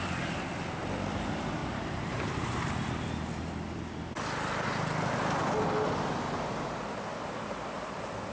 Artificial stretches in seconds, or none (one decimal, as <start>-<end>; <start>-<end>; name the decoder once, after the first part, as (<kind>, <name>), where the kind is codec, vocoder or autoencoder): 1.6-2.7 (vocoder, BigVGAN v2)